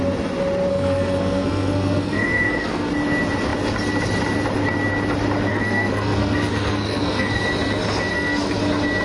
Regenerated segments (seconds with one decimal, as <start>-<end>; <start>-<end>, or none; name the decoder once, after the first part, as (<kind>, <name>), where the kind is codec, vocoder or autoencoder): 0.7-2.9 (codec, SNAC); 5.5-7.4; 8.1-8.6